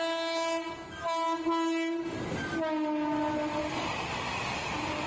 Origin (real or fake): real